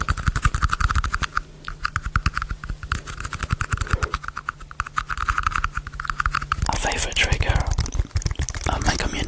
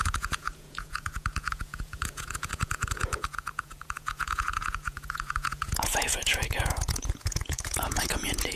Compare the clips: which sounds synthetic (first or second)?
second